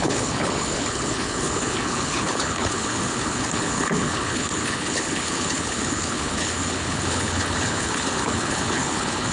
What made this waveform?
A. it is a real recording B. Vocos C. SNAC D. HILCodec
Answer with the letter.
D